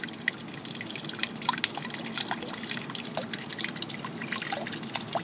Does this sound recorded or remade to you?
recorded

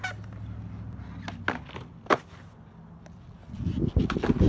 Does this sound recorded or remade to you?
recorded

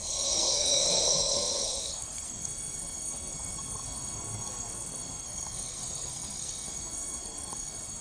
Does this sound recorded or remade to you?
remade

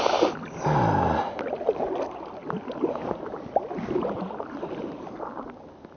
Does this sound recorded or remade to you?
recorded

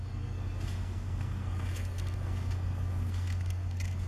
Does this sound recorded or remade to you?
remade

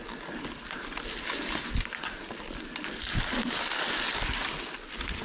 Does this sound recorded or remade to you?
recorded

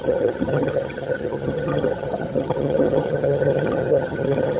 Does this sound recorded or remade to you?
remade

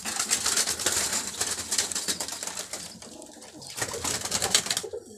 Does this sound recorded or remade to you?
recorded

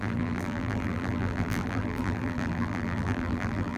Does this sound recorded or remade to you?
remade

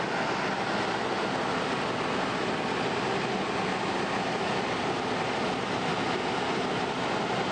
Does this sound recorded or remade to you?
recorded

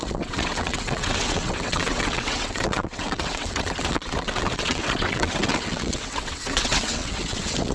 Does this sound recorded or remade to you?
remade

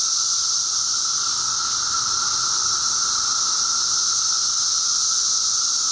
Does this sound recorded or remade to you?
recorded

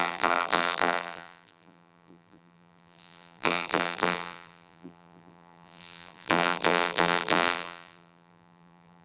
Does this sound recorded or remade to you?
remade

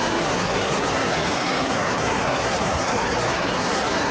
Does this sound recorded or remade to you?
remade